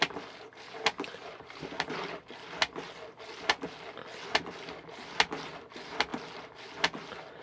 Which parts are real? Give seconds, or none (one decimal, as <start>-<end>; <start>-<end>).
0.0-7.4